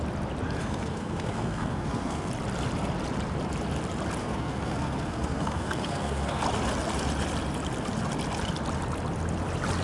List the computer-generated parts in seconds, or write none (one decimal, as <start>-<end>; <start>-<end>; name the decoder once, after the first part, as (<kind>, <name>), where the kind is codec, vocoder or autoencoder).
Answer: 0.6-2.3 (codec, SNAC); 4.2-6.4